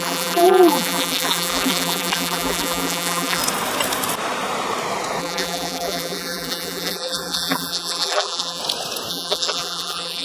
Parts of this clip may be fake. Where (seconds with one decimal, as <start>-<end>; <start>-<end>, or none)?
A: 0.0-3.4; 5.2-8.6; 9.1-10.2